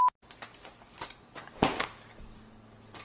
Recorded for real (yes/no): yes